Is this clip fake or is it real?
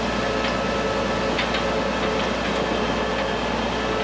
real